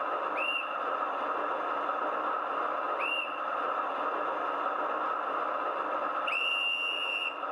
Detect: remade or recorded recorded